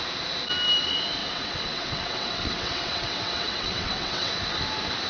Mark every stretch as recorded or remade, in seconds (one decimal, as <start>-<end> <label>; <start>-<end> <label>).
0.0-1.2 recorded; 1.2-4.3 remade; 4.3-5.1 recorded